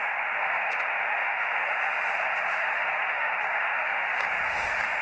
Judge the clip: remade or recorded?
remade